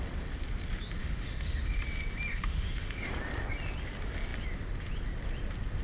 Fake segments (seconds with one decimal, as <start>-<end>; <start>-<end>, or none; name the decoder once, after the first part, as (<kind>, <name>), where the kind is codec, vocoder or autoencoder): 1.0-1.6 (autoencoder, DAC-VAE); 2.3-3.1